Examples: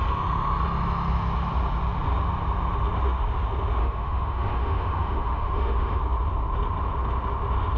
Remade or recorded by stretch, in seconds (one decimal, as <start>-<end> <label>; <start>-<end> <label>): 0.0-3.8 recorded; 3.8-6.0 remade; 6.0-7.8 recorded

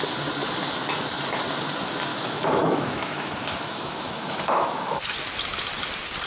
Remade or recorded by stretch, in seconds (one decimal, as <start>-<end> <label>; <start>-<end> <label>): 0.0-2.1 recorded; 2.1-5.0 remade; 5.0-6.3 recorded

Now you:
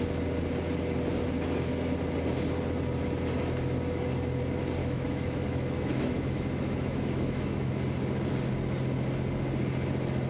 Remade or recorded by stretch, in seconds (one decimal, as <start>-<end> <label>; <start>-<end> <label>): 0.0-4.8 recorded; 4.8-7.7 remade; 7.7-10.3 recorded